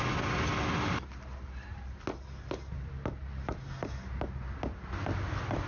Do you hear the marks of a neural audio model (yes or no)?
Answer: no